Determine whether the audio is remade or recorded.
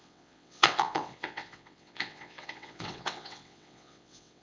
remade